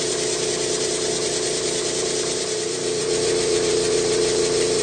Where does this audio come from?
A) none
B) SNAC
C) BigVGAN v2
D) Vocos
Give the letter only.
C